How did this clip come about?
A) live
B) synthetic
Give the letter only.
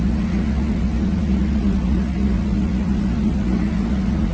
B